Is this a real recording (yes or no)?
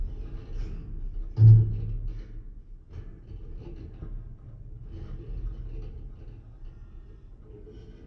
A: yes